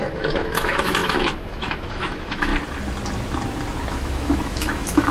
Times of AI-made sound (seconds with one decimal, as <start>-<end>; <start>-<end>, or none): 0.0-2.5; 3.9-5.1